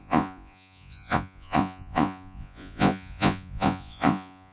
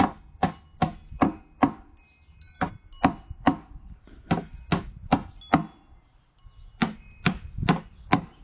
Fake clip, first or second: first